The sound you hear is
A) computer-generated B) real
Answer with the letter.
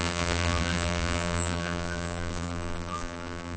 A